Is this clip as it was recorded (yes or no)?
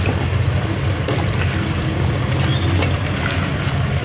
yes